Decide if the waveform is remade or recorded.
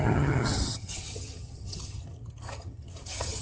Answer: remade